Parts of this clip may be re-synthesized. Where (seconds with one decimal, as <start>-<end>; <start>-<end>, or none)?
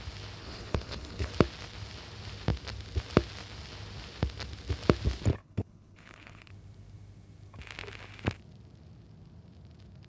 0.4-1.3; 5.4-6.5